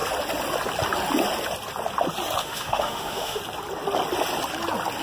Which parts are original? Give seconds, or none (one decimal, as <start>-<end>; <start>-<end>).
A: 0.0-2.4; 3.4-5.0